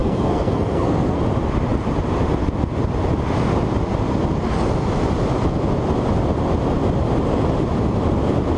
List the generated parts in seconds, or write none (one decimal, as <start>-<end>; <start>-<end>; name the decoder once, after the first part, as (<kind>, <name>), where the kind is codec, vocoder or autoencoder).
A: 0.0-1.2 (codec, SNAC)